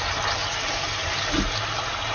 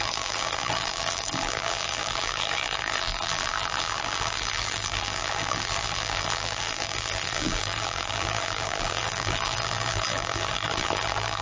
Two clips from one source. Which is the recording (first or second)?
first